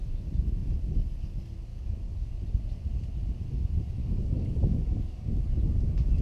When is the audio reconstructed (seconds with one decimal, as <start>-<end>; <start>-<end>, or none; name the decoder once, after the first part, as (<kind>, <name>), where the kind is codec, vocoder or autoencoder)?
1.7-2.3 (codec, DAC); 4.0-5.4